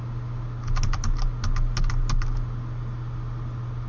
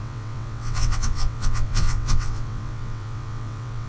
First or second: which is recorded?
first